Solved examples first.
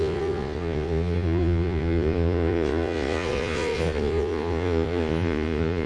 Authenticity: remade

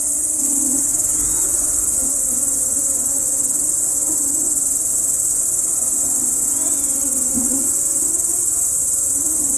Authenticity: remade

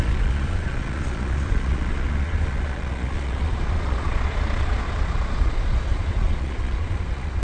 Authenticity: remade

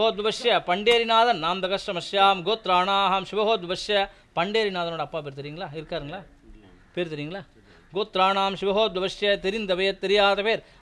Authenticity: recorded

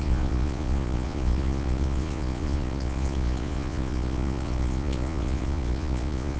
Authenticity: remade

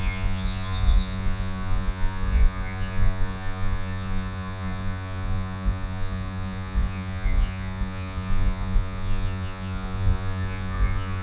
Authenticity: remade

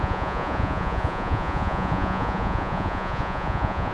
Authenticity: remade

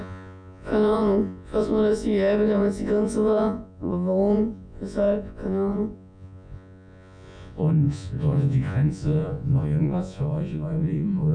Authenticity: remade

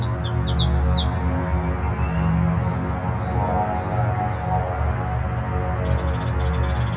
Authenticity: recorded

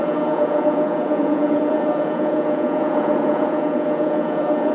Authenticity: remade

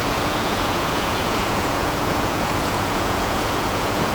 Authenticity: remade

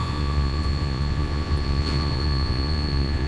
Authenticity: remade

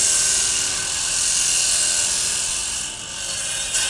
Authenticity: recorded